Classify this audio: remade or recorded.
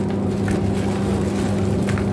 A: recorded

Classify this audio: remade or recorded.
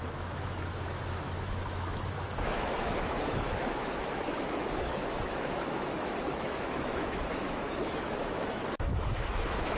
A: remade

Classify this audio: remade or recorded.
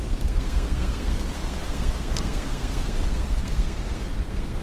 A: remade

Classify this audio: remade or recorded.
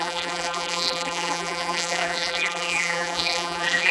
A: remade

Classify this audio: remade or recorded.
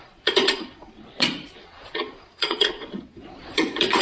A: remade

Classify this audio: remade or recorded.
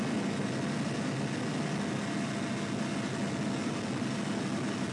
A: recorded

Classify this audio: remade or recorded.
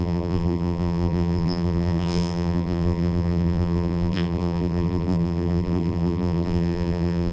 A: remade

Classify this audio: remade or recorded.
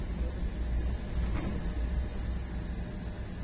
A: recorded